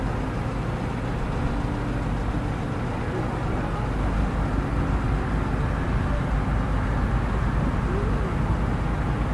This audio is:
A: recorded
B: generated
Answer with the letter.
A